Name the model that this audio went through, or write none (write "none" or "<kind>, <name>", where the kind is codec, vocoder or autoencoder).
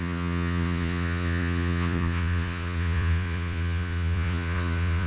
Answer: vocoder, Vocos